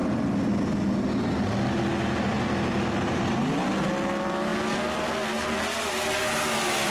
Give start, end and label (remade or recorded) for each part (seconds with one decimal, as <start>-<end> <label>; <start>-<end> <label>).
0.0-6.9 recorded